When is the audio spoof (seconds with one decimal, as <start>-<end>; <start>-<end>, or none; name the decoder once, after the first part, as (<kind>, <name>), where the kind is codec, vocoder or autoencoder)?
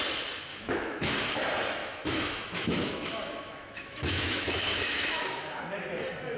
0.5-1.1 (autoencoder, DAC-VAE); 1.8-5.6